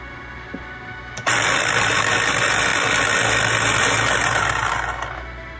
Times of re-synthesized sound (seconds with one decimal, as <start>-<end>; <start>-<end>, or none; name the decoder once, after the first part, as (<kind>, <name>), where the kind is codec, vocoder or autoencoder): none